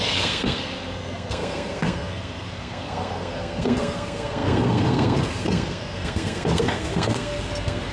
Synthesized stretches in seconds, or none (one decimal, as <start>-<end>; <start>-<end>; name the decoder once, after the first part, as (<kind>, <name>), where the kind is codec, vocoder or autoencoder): 0.0-7.9 (codec, SNAC)